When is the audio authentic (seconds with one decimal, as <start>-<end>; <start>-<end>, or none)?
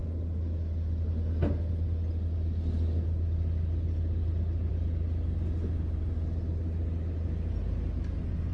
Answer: 0.0-8.5